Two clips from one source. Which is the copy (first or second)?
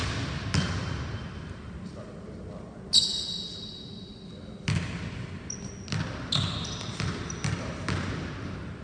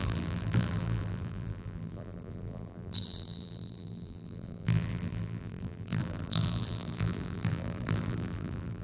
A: second